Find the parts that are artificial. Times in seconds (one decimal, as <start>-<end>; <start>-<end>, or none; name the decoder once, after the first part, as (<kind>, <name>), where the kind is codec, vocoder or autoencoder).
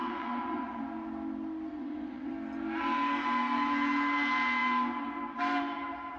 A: 0.0-0.8 (vocoder, WaveNeXt); 1.7-2.3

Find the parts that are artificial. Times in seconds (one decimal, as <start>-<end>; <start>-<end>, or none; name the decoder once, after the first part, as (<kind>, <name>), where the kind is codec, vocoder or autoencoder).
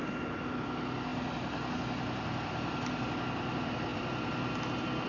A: none